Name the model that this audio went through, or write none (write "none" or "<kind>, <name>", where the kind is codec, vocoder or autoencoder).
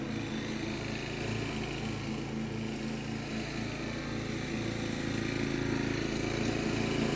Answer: none